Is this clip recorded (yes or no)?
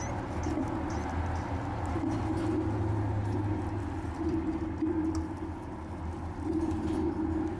yes